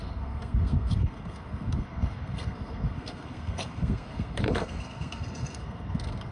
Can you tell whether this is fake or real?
fake